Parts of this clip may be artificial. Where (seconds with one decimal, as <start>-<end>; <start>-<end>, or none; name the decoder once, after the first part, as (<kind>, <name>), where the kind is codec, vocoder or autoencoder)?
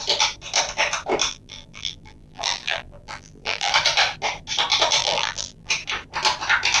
1.3-3.7 (vocoder, BigVGAN v2); 5.0-5.7